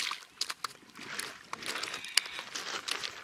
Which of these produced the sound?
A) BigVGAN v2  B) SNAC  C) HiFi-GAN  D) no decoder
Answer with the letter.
D